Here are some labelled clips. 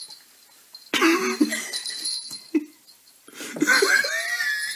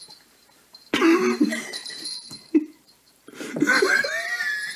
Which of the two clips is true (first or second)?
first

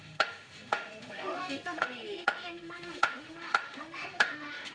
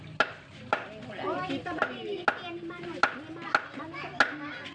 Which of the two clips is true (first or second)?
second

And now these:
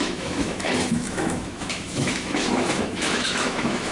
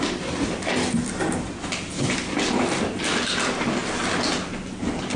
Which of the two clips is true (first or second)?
second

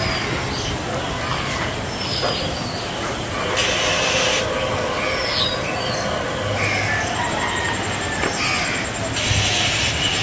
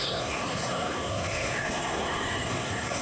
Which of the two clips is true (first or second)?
first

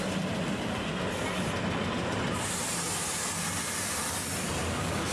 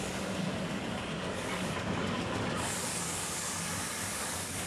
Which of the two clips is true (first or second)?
first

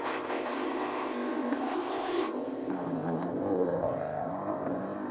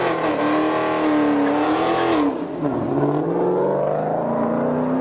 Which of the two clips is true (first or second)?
second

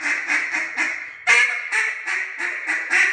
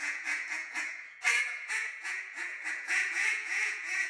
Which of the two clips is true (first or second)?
first